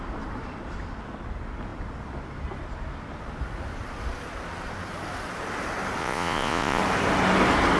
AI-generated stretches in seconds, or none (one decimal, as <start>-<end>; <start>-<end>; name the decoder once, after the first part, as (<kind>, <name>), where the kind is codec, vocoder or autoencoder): 6.0-6.8 (vocoder, Vocos)